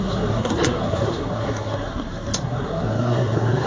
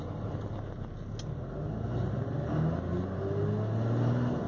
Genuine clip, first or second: second